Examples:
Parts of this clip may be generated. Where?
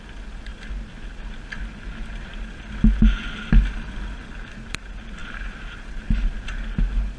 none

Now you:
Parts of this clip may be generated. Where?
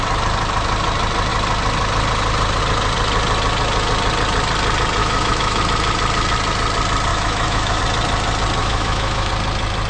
5.0-5.6 (autoencoder, DAC-VAE); 7.1-7.8; 8.6-9.3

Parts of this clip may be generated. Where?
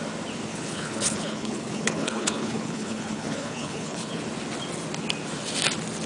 0.5-4.2 (codec, HILCodec)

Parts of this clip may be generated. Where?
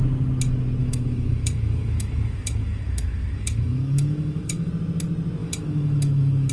0.8-4.7 (autoencoder, DAC-VAE); 5.4-6.5